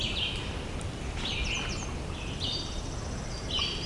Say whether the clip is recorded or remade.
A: recorded